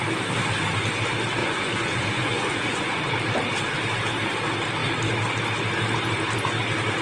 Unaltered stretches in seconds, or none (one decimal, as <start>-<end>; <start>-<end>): 0.0-1.4; 3.0-7.0